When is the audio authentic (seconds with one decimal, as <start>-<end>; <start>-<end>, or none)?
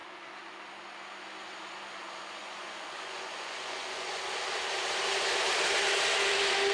0.0-2.4; 4.2-6.7